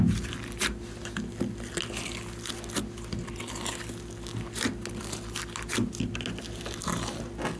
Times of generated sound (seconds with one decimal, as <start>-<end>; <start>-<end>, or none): none